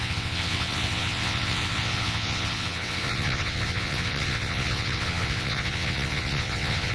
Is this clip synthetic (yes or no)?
yes